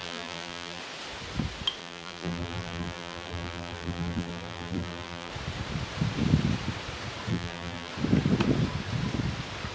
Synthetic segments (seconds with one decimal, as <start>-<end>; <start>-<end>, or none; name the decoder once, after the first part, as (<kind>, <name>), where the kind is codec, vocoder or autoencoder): 0.0-0.8 (vocoder, BigVGAN v2); 1.8-5.3; 7.3-7.9